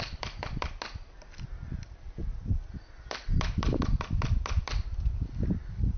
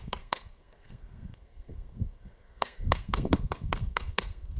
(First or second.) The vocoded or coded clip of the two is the second